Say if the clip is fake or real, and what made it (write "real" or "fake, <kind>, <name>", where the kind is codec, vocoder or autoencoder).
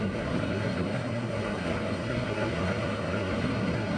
fake, codec, SNAC